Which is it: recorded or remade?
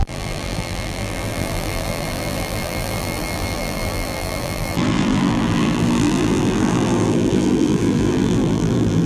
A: remade